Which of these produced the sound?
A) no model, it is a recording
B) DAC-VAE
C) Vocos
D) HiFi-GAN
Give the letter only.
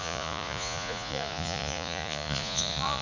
C